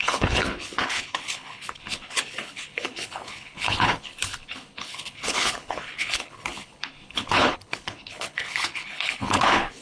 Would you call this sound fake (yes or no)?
yes